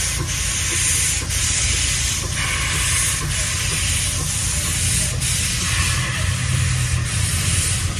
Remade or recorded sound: recorded